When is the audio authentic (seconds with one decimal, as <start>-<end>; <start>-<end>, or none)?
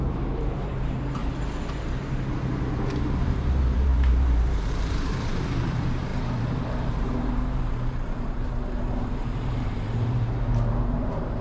1.2-1.7